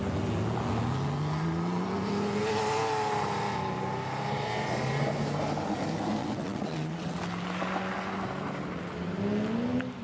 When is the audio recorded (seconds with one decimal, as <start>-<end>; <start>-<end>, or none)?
0.0-6.2; 7.2-10.0